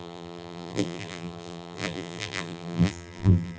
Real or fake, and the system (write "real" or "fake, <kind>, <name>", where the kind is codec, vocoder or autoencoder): fake, vocoder, BigVGAN v2